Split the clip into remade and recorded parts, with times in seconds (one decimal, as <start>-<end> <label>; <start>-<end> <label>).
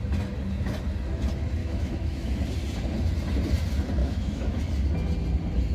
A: 0.0-1.6 recorded; 1.6-2.3 remade; 2.3-4.0 recorded; 4.0-4.6 remade; 4.6-5.7 recorded